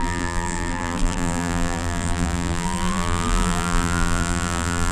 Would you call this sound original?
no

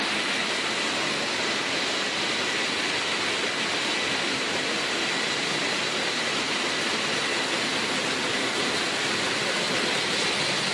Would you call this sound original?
yes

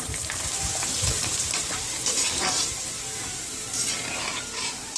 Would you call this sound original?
no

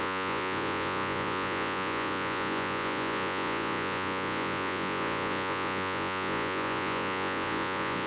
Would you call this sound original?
no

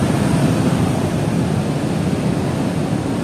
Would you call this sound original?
yes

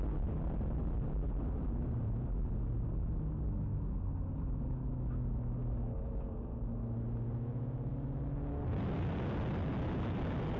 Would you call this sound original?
yes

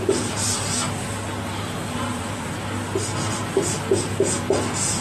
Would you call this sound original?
yes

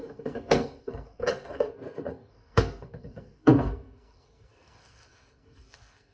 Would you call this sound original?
no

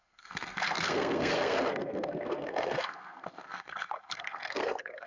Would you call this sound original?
no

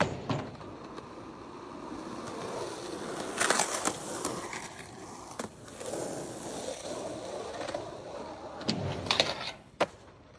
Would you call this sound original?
yes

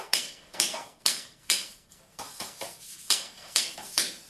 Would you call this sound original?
no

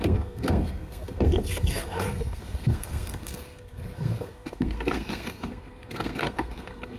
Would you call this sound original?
no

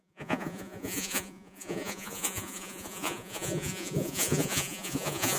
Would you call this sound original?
no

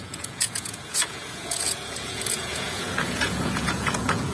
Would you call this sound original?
no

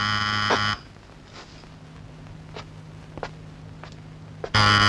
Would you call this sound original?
yes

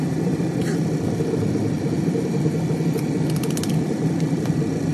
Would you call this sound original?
no